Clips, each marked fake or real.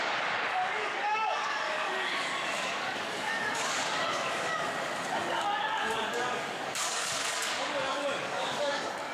fake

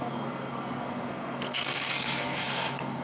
fake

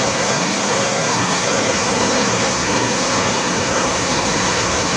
fake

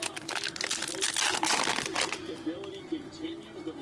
real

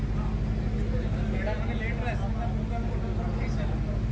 real